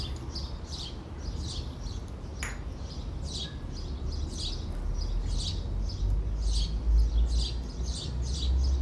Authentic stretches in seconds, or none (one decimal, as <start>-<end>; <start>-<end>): 0.0-0.4; 1.1-8.8